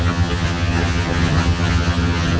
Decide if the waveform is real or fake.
fake